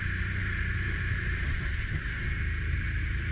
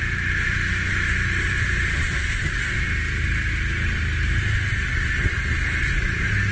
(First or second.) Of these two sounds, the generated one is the first